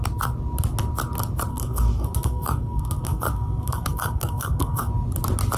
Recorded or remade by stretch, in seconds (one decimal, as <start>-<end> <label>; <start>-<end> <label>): 0.0-1.5 recorded; 1.5-4.9 remade; 4.9-5.6 recorded